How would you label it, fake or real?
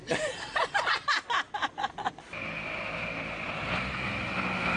real